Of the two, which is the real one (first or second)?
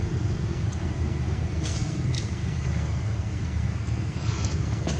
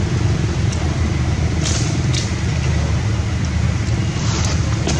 second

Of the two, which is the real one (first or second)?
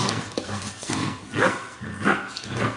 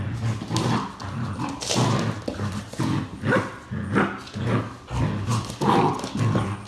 second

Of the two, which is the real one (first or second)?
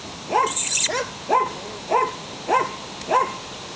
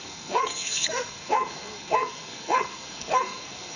first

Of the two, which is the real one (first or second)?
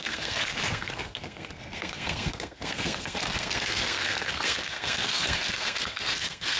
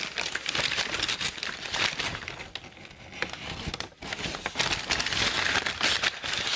second